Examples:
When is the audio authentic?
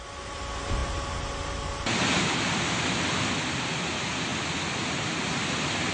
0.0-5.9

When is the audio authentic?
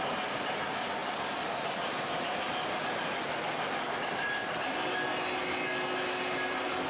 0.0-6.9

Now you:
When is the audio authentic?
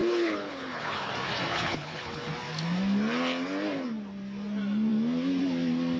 1.1-1.5; 2.3-6.0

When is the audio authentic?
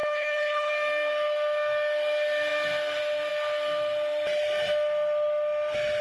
0.7-6.0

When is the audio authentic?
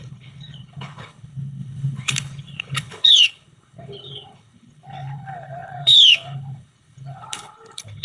none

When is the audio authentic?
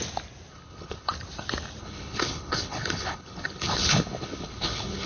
0.0-0.5; 1.1-1.8